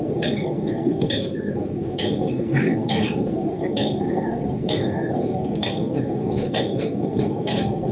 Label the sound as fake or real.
fake